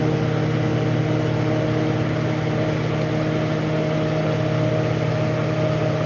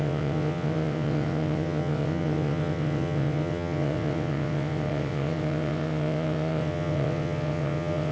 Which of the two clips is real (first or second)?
first